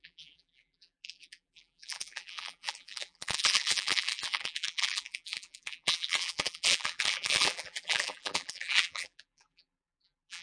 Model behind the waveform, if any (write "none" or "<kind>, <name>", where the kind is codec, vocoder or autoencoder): vocoder, BigVGAN v2